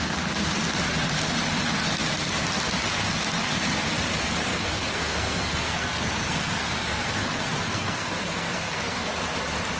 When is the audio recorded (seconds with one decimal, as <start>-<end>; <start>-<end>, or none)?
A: 0.0-4.5; 9.1-9.8